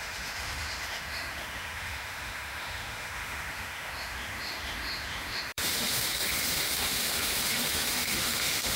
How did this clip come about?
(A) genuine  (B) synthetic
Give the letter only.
B